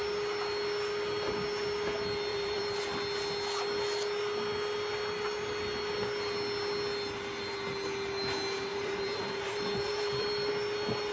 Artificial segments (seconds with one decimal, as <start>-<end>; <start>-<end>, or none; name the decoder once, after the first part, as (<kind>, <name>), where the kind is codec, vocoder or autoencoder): 2.3-2.8 (vocoder, BigVGAN v2); 8.7-10.5